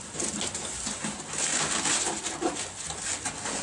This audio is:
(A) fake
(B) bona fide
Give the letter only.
B